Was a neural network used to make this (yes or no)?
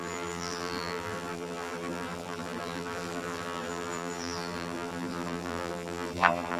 yes